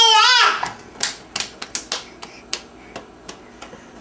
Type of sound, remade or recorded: recorded